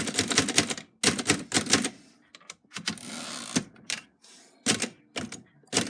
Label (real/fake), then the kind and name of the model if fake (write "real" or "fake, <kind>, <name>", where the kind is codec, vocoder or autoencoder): real